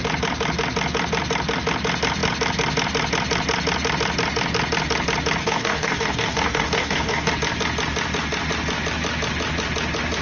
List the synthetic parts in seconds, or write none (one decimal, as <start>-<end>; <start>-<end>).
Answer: 5.4-7.3